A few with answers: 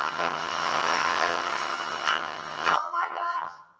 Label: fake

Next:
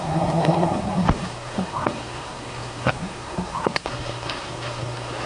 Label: fake